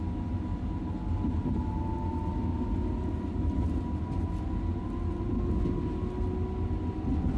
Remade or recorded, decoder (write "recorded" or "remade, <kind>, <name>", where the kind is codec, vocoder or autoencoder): recorded